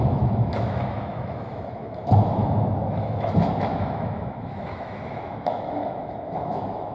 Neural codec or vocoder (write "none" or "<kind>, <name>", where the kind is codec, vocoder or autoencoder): autoencoder, DAC-VAE